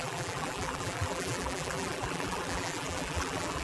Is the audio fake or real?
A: fake